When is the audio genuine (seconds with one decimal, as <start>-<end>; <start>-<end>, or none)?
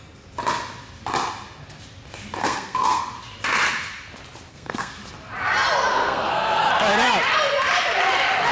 0.0-2.4; 3.0-4.5; 5.0-5.9; 6.6-8.5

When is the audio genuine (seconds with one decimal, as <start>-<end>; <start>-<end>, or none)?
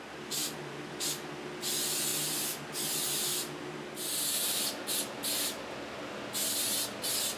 0.0-7.4